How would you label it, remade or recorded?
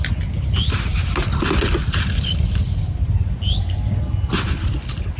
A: recorded